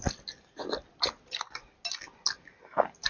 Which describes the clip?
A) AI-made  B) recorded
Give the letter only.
B